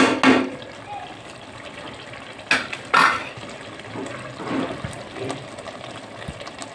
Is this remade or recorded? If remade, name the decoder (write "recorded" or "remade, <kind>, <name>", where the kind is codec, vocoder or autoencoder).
recorded